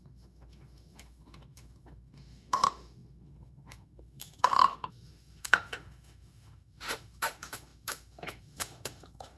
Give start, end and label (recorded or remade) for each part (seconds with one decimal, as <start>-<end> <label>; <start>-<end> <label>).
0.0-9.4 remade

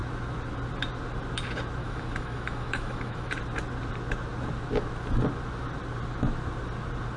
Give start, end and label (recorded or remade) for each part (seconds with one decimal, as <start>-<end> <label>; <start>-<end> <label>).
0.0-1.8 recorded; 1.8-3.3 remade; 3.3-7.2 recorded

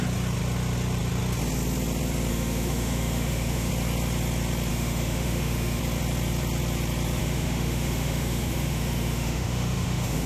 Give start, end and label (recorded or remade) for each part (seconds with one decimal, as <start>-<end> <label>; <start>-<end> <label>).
0.0-2.3 recorded; 2.3-3.7 remade; 3.7-4.7 recorded; 4.7-5.8 remade; 5.8-7.2 recorded; 7.2-10.3 remade